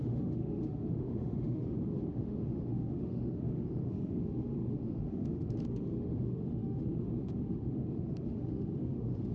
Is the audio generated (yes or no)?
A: yes